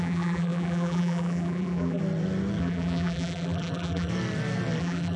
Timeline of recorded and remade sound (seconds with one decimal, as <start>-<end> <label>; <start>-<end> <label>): 0.0-2.0 remade; 2.0-2.6 recorded; 2.6-4.1 remade; 4.1-4.8 recorded; 4.8-5.2 remade